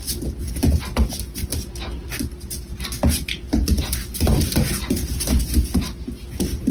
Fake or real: real